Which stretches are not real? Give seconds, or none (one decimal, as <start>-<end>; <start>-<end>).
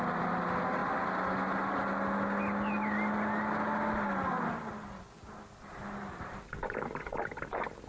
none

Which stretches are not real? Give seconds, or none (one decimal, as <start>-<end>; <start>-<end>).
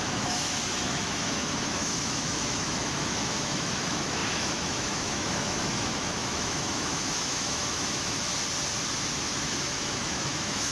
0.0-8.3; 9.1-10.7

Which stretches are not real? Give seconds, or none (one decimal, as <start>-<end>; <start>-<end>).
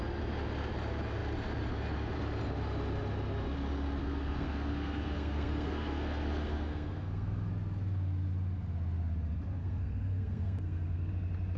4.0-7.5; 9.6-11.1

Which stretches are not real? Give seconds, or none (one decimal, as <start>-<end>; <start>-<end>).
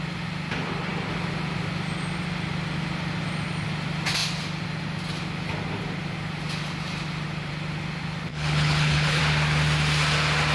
8.3-9.2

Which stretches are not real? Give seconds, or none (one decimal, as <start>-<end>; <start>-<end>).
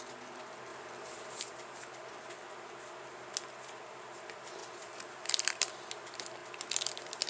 0.7-1.4; 4.6-5.9; 6.4-7.3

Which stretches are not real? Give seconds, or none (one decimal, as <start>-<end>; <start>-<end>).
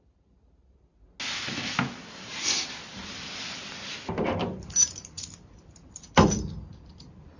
3.0-7.4